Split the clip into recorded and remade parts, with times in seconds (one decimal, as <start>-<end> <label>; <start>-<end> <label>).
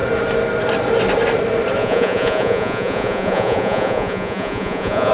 0.0-1.8 recorded; 1.8-5.1 remade